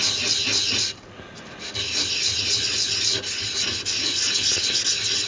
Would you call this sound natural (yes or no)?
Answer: yes